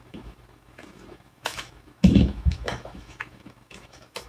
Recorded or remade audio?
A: remade